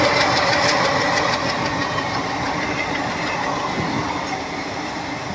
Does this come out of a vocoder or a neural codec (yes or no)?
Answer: no